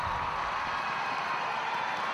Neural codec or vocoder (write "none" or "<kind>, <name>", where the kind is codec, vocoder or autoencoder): none